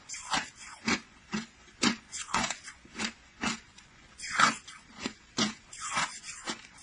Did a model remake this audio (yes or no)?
yes